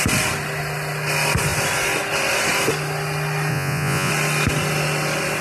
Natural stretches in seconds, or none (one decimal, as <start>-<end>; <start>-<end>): 0.0-3.5; 4.1-5.4